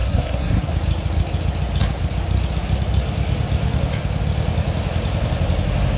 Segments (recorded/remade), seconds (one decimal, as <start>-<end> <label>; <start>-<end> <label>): 0.0-0.7 remade; 0.7-6.0 recorded